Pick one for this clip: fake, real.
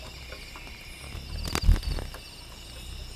real